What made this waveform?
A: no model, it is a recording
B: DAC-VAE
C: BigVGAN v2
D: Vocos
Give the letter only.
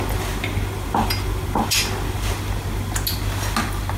A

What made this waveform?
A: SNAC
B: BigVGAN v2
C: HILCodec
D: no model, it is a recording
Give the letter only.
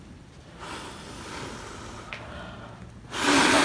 D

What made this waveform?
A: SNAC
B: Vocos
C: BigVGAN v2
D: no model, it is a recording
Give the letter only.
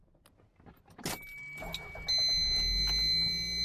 D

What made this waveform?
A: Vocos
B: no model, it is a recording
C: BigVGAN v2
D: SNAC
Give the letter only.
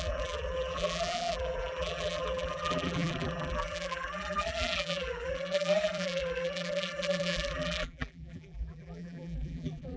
C